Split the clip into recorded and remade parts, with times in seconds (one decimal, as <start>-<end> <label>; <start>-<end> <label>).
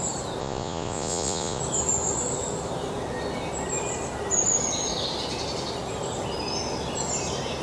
0.0-0.4 recorded; 0.4-1.6 remade; 1.6-7.6 recorded